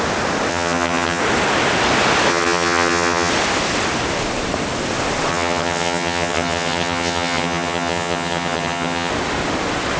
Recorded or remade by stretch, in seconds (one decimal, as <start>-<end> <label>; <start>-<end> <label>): 0.0-0.5 recorded; 0.5-1.2 remade; 1.2-2.3 recorded; 2.3-3.3 remade; 3.3-5.3 recorded; 5.3-9.1 remade; 9.1-10.0 recorded